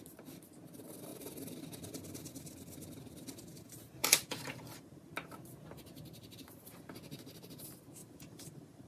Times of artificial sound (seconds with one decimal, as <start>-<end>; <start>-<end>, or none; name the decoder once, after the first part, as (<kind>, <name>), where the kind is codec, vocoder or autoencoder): 4.0-5.1 (vocoder, BigVGAN v2); 8.0-8.9

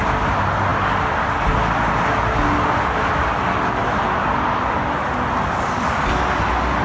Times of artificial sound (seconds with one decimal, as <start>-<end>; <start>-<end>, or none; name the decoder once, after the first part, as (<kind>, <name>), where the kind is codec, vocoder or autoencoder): none

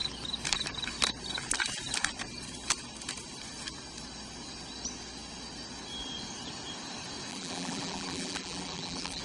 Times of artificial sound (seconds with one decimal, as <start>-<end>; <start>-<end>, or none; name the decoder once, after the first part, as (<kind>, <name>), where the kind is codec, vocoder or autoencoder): 7.3-9.2 (vocoder, BigVGAN v2)

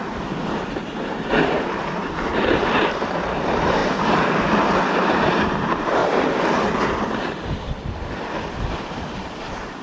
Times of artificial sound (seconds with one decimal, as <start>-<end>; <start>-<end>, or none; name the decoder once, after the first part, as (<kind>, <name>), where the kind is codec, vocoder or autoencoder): 0.0-6.0 (vocoder, BigVGAN v2); 8.9-9.8

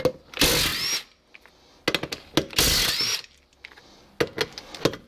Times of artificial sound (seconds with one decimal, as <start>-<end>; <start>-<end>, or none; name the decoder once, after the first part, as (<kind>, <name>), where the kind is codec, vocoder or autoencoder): none

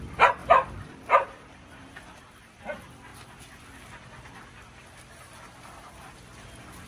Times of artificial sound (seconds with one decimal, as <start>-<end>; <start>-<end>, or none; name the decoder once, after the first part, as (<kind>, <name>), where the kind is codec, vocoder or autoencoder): 0.4-2.6 (vocoder, BigVGAN v2)

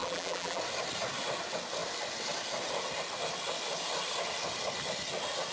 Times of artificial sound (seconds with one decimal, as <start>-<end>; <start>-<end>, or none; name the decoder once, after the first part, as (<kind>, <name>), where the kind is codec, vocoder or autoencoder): 0.0-0.6 (vocoder, BigVGAN v2)